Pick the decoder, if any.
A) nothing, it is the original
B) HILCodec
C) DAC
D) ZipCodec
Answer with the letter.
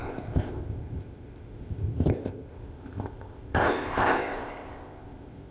D